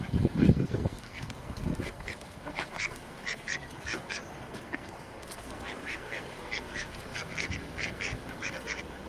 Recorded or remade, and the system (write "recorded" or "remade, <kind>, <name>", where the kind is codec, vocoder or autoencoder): remade, codec, SNAC